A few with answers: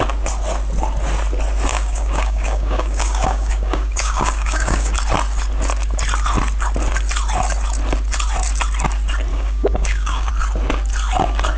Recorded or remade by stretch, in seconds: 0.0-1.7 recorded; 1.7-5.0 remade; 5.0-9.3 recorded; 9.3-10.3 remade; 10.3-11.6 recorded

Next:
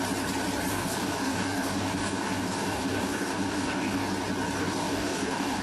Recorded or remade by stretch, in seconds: 0.0-0.7 recorded; 0.7-4.1 remade; 4.1-4.6 recorded; 4.6-5.6 remade

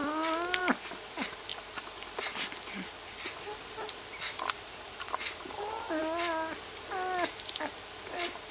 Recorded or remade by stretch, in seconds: 0.0-0.6 remade; 0.6-8.5 recorded

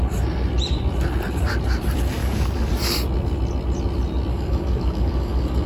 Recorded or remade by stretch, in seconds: 0.0-2.2 recorded; 2.2-2.7 remade; 2.7-4.3 recorded; 4.3-5.7 remade

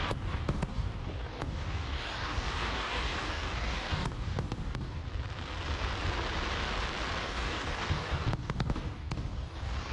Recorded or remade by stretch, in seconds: 0.0-5.0 remade; 5.0-7.2 recorded; 7.2-9.9 remade

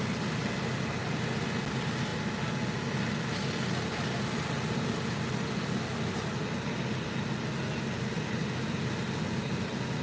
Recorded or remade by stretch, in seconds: 0.0-10.0 recorded

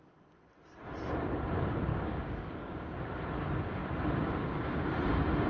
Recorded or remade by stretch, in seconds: 0.0-1.9 recorded; 1.9-3.0 remade; 3.0-5.5 recorded